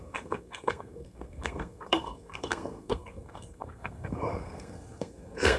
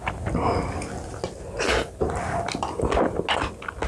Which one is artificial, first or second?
first